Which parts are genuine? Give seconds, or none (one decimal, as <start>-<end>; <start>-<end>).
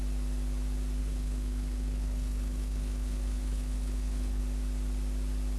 0.0-1.0; 4.4-5.6